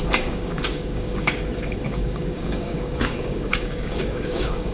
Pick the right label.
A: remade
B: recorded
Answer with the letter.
A